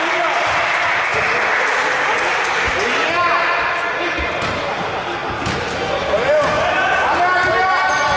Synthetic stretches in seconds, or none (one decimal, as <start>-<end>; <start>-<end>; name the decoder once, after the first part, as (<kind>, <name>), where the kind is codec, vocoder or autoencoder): 5.2-5.8 (vocoder, BigVGAN v2)